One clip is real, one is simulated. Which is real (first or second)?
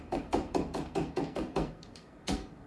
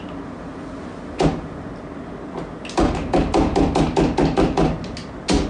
second